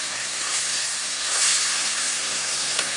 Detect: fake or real fake